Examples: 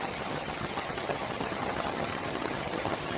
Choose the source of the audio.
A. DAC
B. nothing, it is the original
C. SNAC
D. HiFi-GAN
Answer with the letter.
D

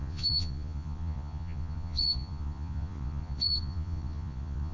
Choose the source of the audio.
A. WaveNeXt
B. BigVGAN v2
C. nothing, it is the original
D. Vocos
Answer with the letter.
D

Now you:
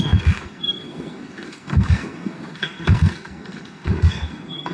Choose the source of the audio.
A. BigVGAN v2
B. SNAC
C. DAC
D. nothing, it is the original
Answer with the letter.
B